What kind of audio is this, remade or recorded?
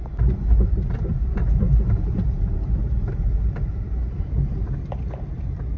remade